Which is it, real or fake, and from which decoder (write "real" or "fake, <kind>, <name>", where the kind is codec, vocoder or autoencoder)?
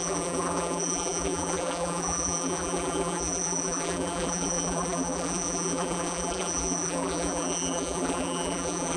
fake, vocoder, BigVGAN v2